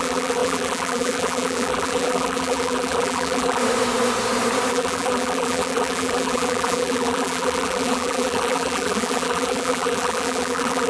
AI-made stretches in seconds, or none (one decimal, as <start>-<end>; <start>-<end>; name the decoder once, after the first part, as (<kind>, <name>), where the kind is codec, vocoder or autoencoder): 0.0-3.6 (vocoder, BigVGAN v2); 4.7-10.9